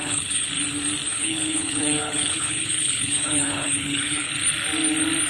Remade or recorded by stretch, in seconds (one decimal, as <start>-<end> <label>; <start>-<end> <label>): 0.0-0.5 remade; 0.5-1.1 recorded; 1.1-4.3 remade; 4.3-5.3 recorded